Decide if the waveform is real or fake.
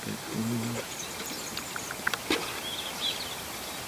real